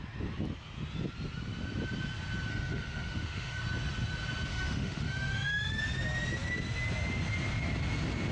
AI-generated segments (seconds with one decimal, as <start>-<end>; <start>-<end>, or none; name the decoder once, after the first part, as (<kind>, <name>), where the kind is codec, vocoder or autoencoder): 2.5-3.6 (autoencoder, DAC-VAE); 4.5-5.8